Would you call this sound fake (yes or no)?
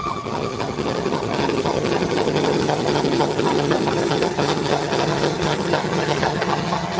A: yes